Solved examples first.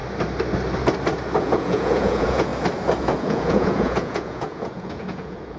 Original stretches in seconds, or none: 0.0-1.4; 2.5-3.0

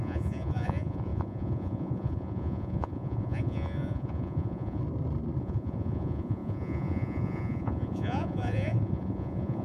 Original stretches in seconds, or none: 4.8-5.4

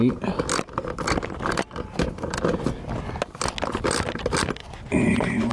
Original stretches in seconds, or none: 0.0-4.6